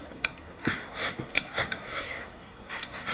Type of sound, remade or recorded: remade